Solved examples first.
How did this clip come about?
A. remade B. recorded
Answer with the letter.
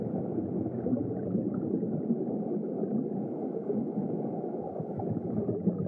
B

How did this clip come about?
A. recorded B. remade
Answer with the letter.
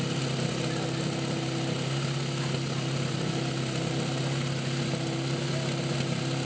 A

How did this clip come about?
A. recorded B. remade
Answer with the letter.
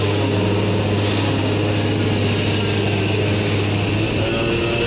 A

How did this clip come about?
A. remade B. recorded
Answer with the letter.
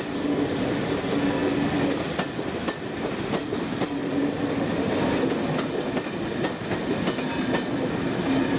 B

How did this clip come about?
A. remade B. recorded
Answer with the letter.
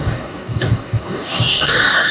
A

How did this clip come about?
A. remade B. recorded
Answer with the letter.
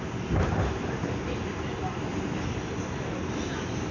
B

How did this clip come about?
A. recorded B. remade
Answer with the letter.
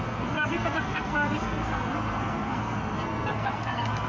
B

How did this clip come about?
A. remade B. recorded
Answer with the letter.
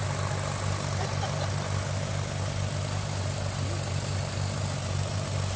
B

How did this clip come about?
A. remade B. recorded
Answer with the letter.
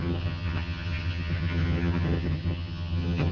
A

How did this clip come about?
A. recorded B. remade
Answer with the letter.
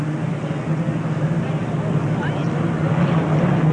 A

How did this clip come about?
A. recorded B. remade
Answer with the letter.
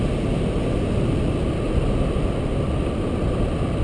A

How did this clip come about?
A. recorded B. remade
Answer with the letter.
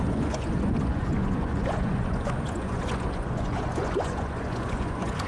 B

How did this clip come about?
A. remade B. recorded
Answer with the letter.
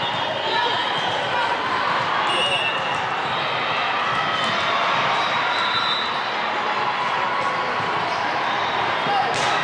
B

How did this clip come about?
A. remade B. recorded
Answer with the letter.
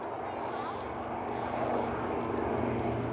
B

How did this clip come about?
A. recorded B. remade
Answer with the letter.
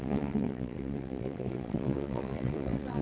B